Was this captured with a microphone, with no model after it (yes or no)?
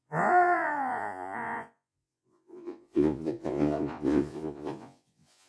no